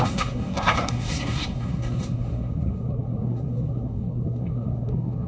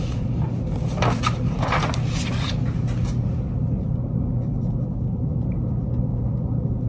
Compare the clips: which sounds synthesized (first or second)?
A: first